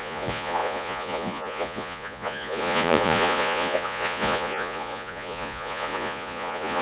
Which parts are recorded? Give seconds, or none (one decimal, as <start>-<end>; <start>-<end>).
none